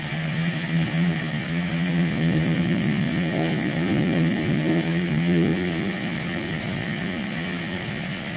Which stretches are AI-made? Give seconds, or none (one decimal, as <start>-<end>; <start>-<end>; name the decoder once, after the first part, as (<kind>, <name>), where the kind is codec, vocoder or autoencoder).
0.0-8.4 (vocoder, Vocos)